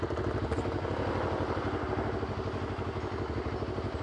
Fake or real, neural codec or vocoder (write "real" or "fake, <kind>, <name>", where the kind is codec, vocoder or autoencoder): real